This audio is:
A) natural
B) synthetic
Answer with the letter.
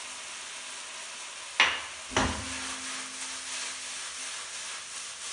A